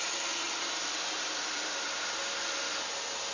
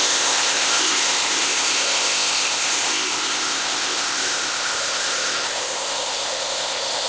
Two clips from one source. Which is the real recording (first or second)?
first